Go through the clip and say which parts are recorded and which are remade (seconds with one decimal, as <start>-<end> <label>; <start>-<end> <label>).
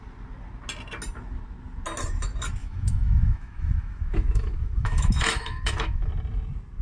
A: 0.0-2.6 recorded; 2.6-6.1 remade; 6.1-6.8 recorded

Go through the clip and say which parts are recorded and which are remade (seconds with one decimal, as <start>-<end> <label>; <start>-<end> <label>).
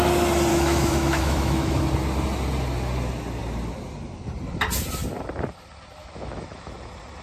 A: 0.0-0.5 recorded; 0.5-1.8 remade; 1.8-6.0 recorded; 6.0-6.7 remade; 6.7-7.2 recorded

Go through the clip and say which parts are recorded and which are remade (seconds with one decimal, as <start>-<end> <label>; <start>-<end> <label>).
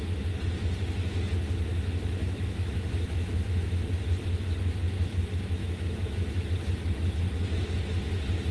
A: 0.0-1.7 recorded; 1.7-3.9 remade; 3.9-5.6 recorded; 5.6-6.5 remade; 6.5-8.5 recorded